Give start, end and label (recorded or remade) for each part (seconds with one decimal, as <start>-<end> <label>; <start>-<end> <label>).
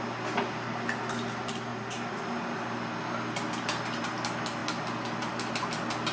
0.0-6.1 recorded